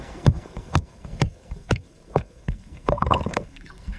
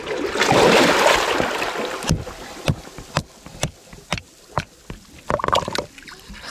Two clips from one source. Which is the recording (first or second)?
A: second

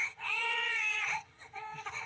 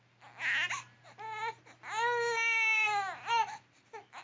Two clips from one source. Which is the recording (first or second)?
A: second